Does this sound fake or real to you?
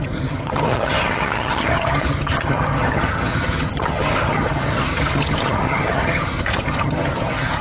fake